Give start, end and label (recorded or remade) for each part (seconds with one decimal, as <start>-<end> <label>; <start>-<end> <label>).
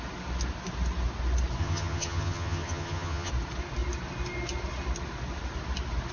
0.0-1.6 recorded; 1.6-3.3 remade; 3.3-6.1 recorded